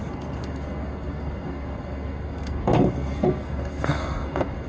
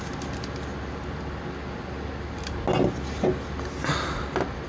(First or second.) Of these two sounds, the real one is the second